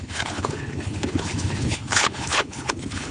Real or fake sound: fake